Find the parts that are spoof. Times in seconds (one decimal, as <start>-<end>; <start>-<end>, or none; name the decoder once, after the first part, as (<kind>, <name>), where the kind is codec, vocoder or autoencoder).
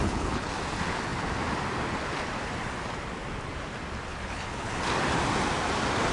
0.0-0.5 (codec, HILCodec); 4.1-4.8